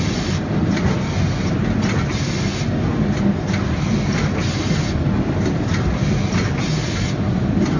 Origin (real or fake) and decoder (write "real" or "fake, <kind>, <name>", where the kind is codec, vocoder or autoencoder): real